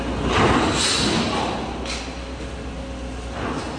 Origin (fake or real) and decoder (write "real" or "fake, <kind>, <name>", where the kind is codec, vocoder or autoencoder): real